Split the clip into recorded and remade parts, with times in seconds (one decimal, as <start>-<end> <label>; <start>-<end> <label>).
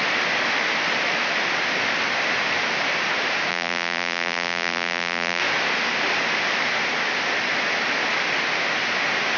0.0-3.5 recorded; 3.5-5.4 remade; 5.4-9.4 recorded